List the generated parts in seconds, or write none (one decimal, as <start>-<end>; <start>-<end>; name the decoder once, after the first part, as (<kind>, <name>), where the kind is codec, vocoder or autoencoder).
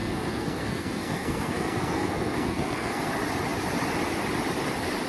0.0-3.1 (codec, SNAC)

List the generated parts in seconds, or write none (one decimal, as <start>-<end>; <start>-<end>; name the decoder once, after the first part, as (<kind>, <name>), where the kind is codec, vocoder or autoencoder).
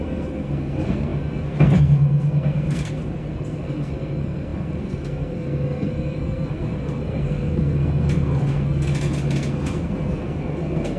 0.0-11.0 (codec, SNAC)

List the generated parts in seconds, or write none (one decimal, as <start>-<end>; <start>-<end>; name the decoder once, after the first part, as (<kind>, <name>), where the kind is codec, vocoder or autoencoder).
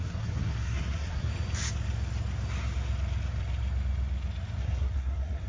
0.0-1.3 (codec, SNAC); 4.6-5.5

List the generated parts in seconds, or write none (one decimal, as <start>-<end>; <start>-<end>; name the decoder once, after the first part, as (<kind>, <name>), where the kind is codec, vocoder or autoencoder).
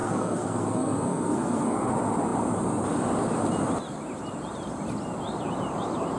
0.0-1.9 (codec, SNAC)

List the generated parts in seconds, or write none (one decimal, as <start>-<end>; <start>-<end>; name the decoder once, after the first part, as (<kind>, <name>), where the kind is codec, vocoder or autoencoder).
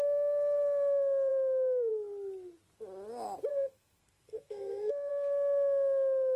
3.5-5.1 (codec, SNAC)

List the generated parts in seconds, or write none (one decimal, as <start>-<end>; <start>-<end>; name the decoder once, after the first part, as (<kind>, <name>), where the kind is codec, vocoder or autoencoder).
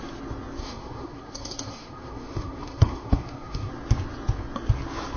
0.6-3.7 (codec, SNAC)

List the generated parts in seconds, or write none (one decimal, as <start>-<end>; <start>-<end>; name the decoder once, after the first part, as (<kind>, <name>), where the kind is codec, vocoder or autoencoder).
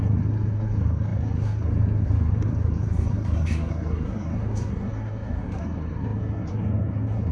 0.0-7.3 (codec, SNAC)